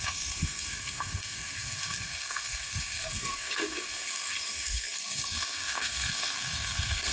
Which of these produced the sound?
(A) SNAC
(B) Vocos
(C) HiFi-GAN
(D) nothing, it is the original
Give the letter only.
A